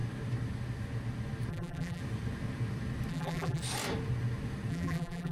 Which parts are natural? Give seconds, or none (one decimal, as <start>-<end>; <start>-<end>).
0.0-1.5; 2.0-3.1; 3.6-4.7